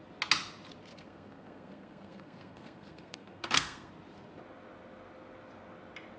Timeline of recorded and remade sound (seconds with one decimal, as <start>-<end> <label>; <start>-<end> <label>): 0.0-0.9 recorded; 0.9-3.9 remade; 3.9-6.2 recorded